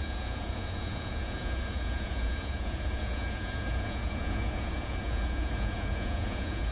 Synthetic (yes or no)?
yes